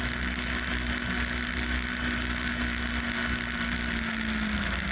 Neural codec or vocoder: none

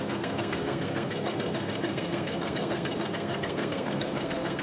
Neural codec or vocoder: codec, SNAC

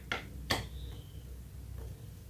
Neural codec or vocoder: none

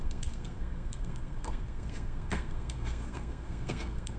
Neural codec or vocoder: codec, SNAC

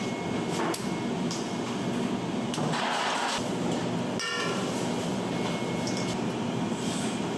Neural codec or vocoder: none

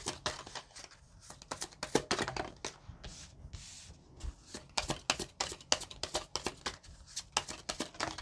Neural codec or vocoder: none